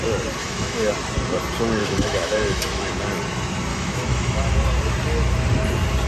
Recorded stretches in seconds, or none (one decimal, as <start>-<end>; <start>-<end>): 0.0-0.4; 0.9-1.8; 2.9-3.7; 4.5-6.1